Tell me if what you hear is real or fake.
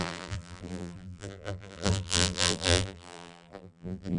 fake